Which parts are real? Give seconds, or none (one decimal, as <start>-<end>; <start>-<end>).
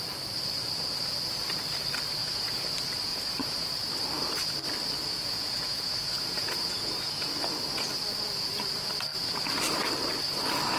0.0-2.2; 2.7-3.1; 3.7-5.0; 7.3-10.8